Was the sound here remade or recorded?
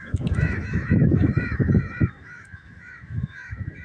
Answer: remade